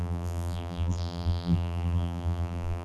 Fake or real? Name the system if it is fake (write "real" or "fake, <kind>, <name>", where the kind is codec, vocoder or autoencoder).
fake, vocoder, BigVGAN v2